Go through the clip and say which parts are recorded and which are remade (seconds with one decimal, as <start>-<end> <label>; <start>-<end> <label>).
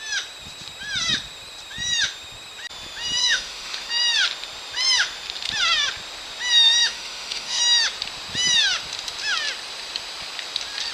0.0-3.2 recorded; 3.2-3.9 remade; 3.9-6.8 recorded; 6.8-7.6 remade; 7.6-10.9 recorded